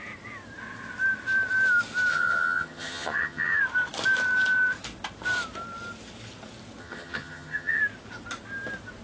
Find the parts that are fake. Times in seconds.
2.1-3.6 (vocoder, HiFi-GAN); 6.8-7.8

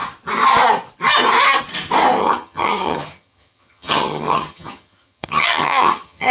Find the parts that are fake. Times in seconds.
2.2-6.3 (vocoder, HiFi-GAN)

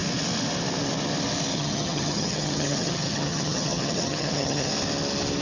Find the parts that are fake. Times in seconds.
1.5-4.7 (vocoder, HiFi-GAN)

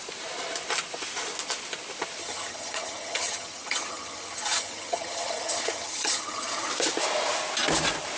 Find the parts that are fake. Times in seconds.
2.2-6.7 (vocoder, HiFi-GAN)

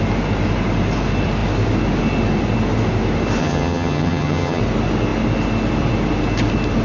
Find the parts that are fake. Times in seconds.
3.4-4.6 (vocoder, HiFi-GAN)